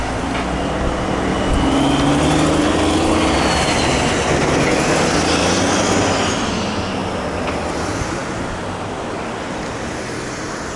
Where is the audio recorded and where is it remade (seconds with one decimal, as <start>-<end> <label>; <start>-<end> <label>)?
0.0-10.8 recorded